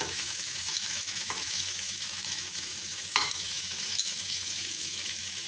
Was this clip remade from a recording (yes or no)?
yes